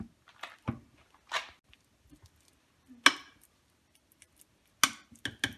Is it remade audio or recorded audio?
recorded